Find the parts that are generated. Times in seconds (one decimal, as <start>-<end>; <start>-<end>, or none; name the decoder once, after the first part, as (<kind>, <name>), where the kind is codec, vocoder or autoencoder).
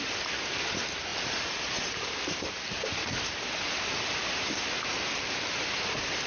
1.1-3.4 (vocoder, BigVGAN v2)